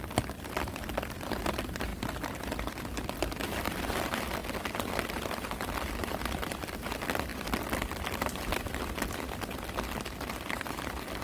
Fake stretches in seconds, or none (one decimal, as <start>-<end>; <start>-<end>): none